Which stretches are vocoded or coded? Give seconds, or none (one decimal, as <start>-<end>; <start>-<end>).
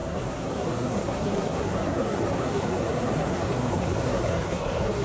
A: 0.0-5.0